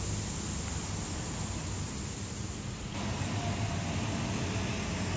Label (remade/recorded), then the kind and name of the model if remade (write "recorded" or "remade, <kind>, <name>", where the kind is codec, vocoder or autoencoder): recorded